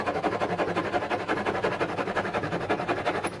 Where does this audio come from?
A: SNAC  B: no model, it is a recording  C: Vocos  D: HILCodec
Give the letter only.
B